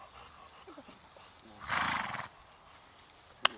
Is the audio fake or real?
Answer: real